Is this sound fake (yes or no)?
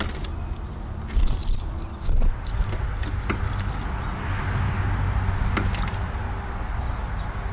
no